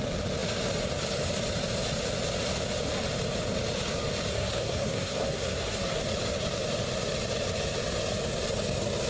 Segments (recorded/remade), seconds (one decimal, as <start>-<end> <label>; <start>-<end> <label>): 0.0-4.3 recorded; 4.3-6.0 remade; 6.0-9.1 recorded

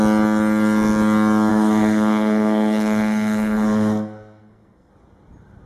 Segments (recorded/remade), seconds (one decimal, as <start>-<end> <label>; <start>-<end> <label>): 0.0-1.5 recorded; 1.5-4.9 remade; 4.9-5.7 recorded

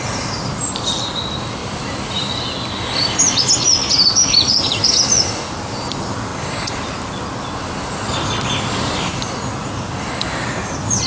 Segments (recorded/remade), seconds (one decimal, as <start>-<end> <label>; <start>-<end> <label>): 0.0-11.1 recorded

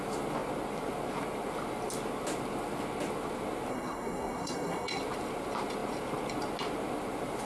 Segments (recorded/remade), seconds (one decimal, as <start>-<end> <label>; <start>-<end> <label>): 0.0-3.7 recorded; 3.7-5.0 remade; 5.0-7.4 recorded

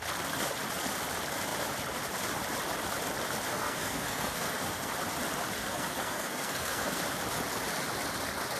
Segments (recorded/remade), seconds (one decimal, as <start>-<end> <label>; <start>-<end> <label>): 0.0-3.5 recorded; 3.5-4.9 remade; 4.9-5.6 recorded; 5.6-7.0 remade; 7.0-8.6 recorded

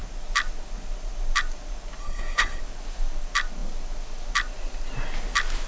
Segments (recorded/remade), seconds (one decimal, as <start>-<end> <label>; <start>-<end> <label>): 0.0-2.0 recorded; 2.0-2.6 remade; 2.6-5.7 recorded

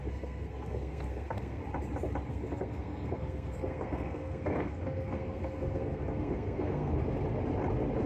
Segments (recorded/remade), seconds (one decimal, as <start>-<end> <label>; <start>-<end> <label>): 0.0-1.6 remade; 1.6-2.3 recorded; 2.3-7.0 remade; 7.0-8.1 recorded

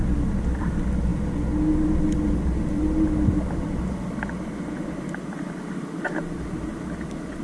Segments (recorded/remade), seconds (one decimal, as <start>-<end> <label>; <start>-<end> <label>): 0.0-7.4 recorded